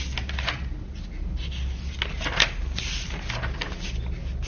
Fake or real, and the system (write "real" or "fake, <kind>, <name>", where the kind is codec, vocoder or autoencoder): real